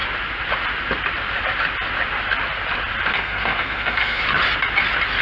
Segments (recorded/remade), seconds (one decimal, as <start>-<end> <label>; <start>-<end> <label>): 0.0-3.1 recorded; 3.1-4.2 remade; 4.2-5.2 recorded